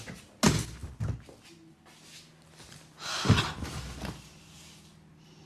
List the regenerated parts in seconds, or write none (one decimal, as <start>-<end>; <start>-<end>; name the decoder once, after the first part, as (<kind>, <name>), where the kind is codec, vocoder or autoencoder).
none